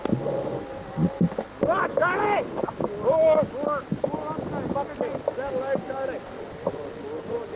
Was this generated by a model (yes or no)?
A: no